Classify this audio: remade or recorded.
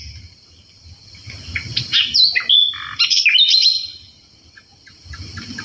recorded